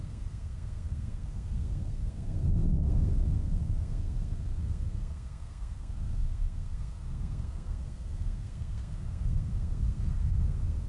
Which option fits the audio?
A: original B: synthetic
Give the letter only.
B